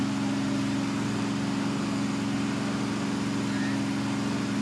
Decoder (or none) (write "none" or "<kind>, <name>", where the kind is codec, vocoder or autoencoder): none